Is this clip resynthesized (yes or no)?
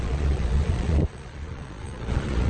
yes